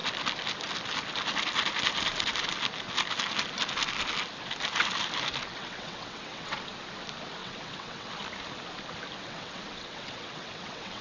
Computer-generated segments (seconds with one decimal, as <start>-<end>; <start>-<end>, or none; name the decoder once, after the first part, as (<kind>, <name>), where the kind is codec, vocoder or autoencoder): 5.5-6.6 (vocoder, WaveNeXt); 7.4-8.1; 9.2-11.0